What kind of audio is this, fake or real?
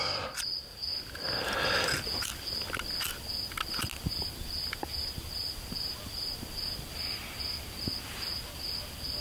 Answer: real